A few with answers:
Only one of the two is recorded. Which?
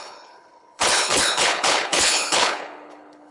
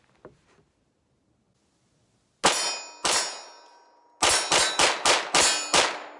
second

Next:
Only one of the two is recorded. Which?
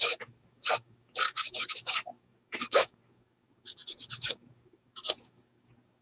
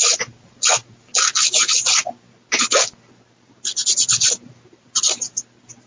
second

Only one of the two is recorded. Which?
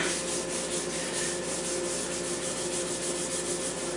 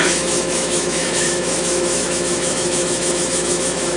first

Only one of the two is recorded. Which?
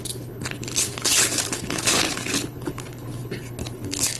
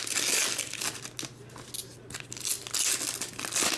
second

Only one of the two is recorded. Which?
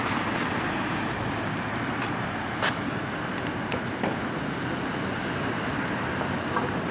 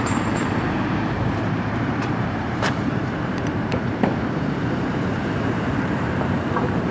first